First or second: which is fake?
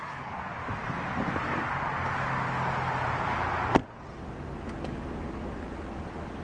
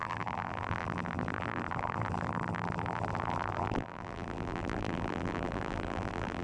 second